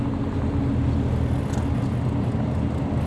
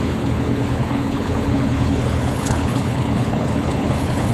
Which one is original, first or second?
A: first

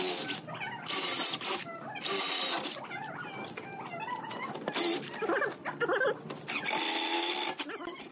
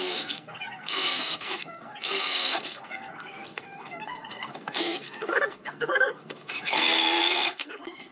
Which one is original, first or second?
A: first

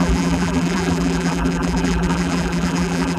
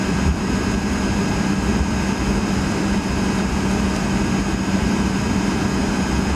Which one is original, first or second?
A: second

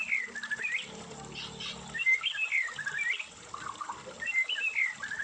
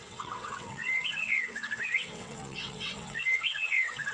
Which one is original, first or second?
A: first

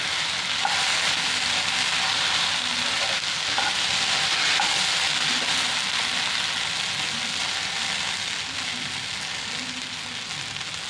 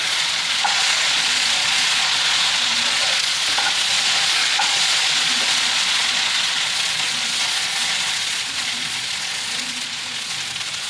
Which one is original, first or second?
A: first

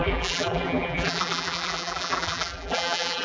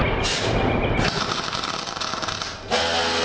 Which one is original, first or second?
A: second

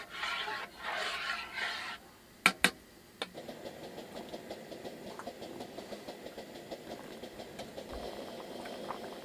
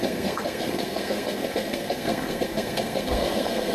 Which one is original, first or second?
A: first